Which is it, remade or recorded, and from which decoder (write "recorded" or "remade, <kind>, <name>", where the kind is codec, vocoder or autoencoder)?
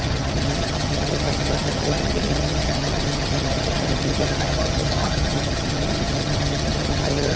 remade, vocoder, HiFi-GAN